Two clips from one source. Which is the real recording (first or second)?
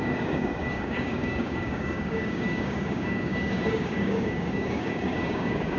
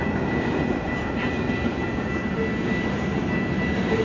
second